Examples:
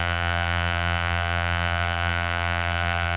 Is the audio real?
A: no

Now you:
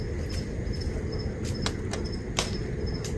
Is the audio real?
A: yes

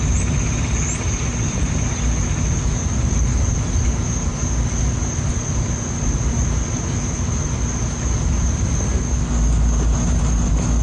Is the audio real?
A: yes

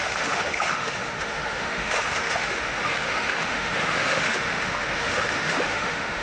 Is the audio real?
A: no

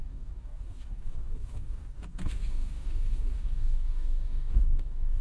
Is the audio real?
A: no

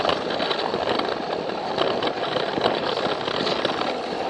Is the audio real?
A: yes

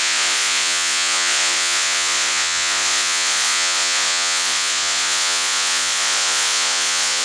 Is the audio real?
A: no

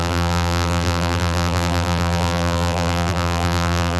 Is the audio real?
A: no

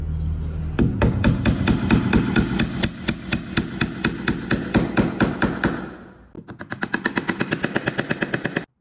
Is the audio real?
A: yes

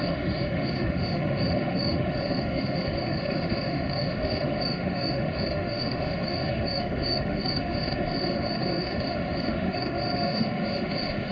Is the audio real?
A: no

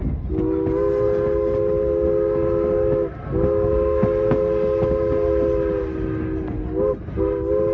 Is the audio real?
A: yes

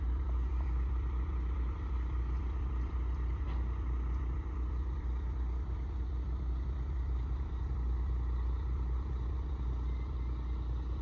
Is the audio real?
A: no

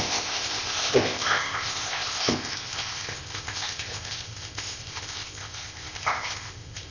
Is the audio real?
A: no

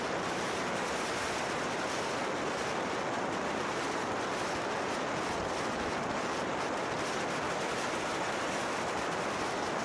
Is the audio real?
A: yes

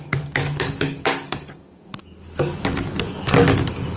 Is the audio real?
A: no